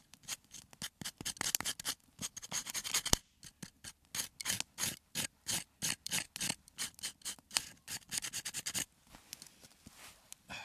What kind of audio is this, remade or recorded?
recorded